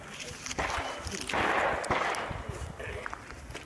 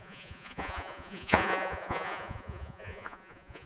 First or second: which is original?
first